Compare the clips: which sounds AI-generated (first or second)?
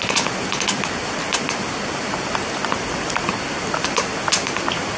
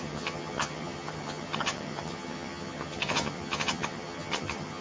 second